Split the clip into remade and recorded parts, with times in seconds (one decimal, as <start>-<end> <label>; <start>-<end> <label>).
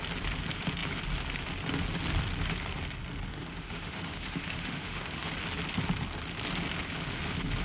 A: 0.0-3.3 recorded; 3.3-5.3 remade; 5.3-7.6 recorded